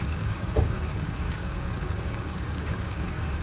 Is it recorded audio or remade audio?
remade